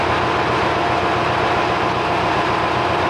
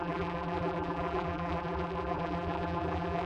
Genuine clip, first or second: first